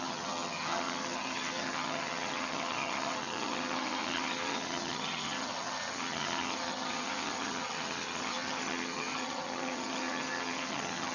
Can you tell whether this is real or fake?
fake